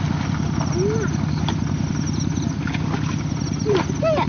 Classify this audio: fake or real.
real